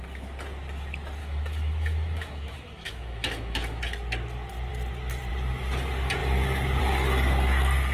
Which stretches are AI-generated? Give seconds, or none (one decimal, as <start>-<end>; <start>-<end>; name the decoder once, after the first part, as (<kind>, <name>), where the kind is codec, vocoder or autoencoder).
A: 1.2-3.8 (autoencoder, DAC-VAE)

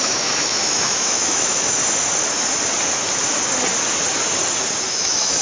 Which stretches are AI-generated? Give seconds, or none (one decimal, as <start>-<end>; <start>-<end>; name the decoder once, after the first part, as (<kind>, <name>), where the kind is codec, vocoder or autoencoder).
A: 0.0-1.8 (autoencoder, DAC-VAE); 4.9-5.4

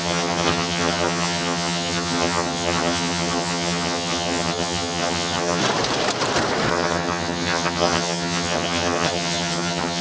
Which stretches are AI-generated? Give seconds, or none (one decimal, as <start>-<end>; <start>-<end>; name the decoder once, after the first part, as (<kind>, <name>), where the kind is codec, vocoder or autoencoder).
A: 0.0-5.6 (vocoder, HiFi-GAN); 6.7-10.0

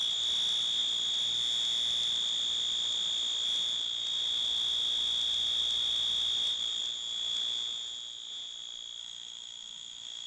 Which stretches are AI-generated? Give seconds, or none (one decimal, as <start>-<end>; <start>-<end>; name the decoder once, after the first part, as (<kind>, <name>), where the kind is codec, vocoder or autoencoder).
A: 9.0-10.3 (autoencoder, DAC-VAE)

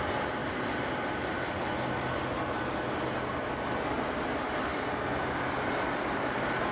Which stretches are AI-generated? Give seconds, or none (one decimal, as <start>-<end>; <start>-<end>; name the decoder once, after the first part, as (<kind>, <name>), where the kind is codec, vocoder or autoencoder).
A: none